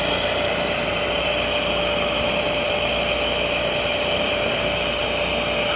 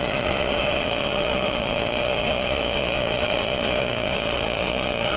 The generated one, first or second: second